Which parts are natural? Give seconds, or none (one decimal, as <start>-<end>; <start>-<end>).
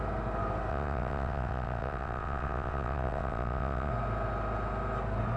0.0-0.7; 3.9-5.4